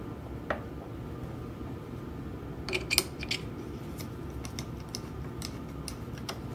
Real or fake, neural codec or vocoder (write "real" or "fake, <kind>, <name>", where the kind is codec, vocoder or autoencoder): real